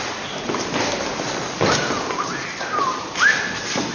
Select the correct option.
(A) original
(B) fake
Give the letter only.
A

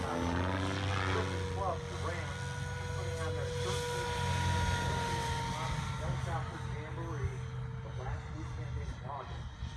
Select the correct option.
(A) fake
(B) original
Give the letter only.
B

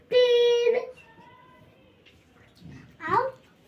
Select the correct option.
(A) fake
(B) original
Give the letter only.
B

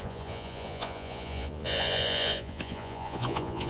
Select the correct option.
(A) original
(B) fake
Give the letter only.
B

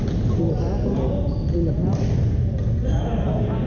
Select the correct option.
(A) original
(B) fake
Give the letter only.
A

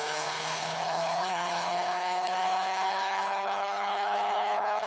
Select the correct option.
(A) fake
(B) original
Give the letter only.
A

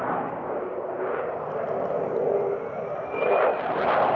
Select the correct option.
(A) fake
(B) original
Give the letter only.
B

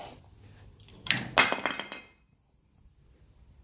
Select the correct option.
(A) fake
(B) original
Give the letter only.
B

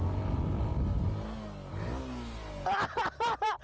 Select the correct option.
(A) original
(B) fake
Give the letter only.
A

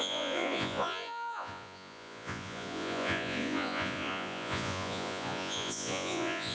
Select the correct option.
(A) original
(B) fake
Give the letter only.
B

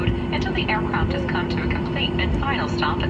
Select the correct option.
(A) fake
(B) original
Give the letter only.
B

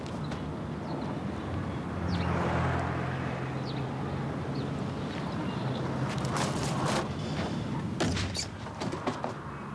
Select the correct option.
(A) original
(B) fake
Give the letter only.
A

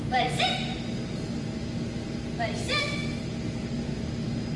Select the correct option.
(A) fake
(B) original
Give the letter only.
B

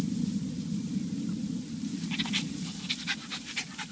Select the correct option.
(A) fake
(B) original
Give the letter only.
A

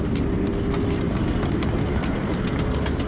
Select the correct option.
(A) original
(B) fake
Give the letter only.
A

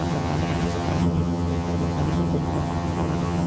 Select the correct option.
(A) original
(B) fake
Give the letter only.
B